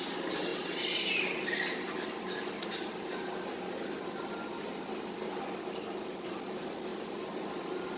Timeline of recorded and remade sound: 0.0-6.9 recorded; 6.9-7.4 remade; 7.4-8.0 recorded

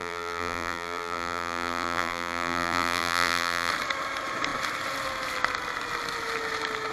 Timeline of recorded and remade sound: 0.0-3.7 remade; 3.7-6.9 recorded

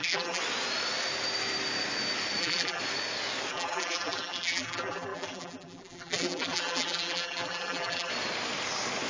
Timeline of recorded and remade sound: 0.0-0.4 remade; 0.4-2.4 recorded; 2.4-2.8 remade; 2.8-3.5 recorded; 3.5-8.1 remade; 8.1-9.1 recorded

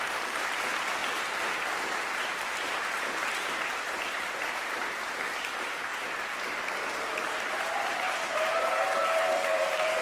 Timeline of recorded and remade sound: 0.0-1.0 remade; 1.0-2.2 recorded; 2.2-5.9 remade; 5.9-7.0 recorded; 7.0-10.0 remade

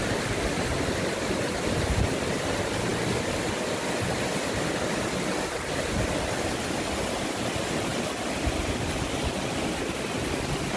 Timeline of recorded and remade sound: 0.0-7.9 recorded; 7.9-9.7 remade; 9.7-10.8 recorded

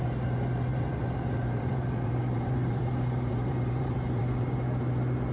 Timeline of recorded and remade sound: 0.0-0.7 recorded; 0.7-2.8 remade; 2.8-3.3 recorded; 3.3-4.2 remade; 4.2-5.3 recorded

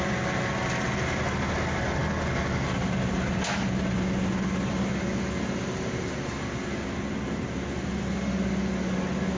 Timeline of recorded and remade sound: 0.0-9.4 recorded

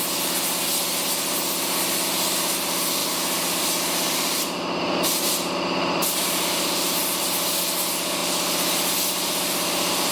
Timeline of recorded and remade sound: 0.0-3.0 recorded; 3.0-7.6 remade; 7.6-10.1 recorded